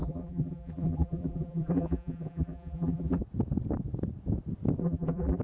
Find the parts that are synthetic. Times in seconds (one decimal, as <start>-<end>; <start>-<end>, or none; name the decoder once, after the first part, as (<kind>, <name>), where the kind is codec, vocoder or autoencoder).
0.0-3.2 (vocoder, BigVGAN v2); 4.8-5.4